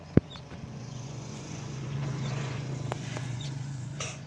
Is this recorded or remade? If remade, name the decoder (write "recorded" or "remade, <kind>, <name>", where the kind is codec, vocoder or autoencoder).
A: remade, vocoder, Vocos